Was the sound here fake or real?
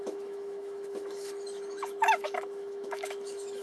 fake